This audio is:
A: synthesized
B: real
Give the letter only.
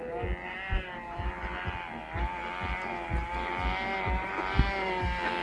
B